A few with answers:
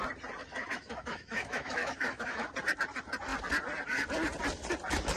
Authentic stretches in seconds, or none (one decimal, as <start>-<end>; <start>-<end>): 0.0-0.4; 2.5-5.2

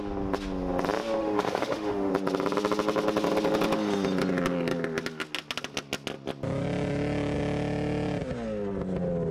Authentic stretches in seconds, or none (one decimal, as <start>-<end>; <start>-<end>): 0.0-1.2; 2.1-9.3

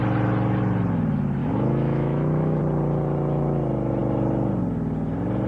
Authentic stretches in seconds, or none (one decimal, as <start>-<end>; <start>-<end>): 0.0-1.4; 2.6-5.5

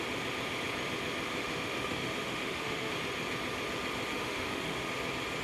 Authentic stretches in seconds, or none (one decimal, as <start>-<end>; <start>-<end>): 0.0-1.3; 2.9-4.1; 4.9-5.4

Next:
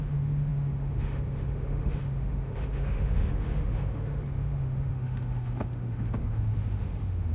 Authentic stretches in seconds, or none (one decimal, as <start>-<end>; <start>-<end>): none

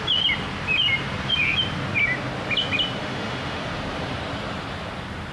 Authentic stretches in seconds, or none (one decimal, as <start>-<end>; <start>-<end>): 0.0-3.0; 3.6-5.3